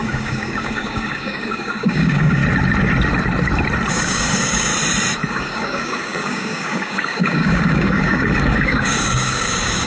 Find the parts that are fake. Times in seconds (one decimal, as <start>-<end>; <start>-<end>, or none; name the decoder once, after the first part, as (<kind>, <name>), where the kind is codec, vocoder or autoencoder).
0.0-2.4 (codec, DAC); 3.9-4.7; 5.3-9.9